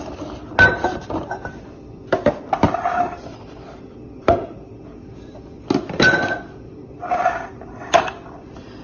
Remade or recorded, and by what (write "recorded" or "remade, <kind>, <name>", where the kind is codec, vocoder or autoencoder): recorded